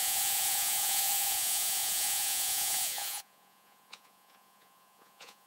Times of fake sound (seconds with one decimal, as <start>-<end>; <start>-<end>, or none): 0.0-5.5